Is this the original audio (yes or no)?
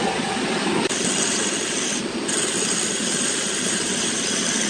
yes